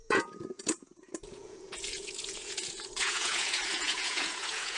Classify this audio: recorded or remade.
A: remade